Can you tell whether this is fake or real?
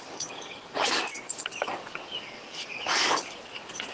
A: fake